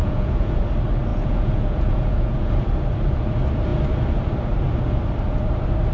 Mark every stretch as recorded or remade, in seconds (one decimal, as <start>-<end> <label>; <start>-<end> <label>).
0.0-0.6 remade; 0.6-1.1 recorded; 1.1-2.5 remade; 2.5-5.9 recorded